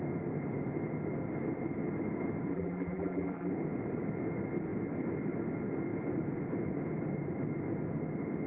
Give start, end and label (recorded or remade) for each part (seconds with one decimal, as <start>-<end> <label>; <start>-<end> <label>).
0.0-2.5 recorded; 2.5-3.5 remade; 3.5-8.5 recorded